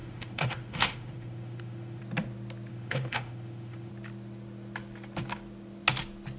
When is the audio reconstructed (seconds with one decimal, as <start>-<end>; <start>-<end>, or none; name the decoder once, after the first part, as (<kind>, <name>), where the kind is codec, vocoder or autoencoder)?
0.0-2.0 (autoencoder, DAC-VAE); 2.7-3.9